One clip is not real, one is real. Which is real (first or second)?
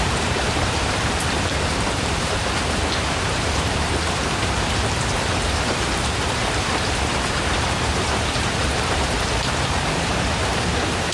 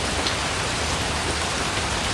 second